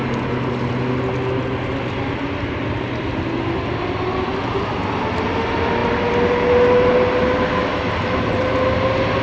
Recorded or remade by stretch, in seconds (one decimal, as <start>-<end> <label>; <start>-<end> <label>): 0.0-9.2 recorded